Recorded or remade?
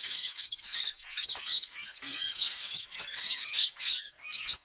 remade